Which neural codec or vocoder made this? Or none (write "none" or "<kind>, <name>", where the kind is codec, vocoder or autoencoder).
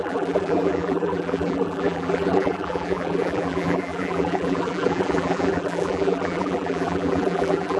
vocoder, BigVGAN v2